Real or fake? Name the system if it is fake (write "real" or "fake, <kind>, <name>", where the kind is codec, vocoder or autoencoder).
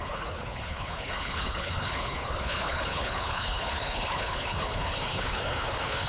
fake, codec, HILCodec